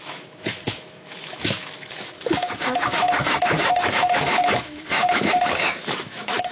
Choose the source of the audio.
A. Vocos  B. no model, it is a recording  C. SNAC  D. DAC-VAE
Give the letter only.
D